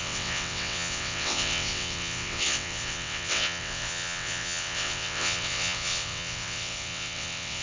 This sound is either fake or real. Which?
fake